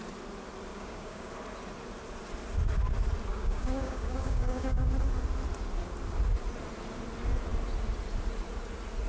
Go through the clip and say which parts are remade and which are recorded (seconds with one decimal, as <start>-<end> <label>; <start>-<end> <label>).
0.0-0.7 recorded; 0.7-1.3 remade; 1.3-3.3 recorded; 3.3-4.9 remade; 4.9-9.1 recorded